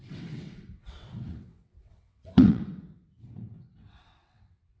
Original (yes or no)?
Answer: no